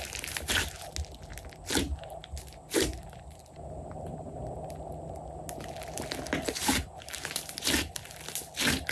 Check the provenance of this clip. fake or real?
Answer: real